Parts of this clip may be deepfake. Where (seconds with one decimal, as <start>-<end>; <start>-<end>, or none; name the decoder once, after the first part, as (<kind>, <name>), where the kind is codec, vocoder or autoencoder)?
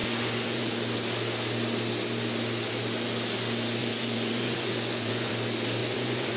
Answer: 0.0-0.7 (vocoder, Vocos); 3.8-5.3; 5.8-6.4